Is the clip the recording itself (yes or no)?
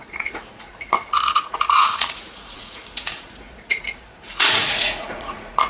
no